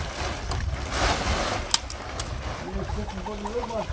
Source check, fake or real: real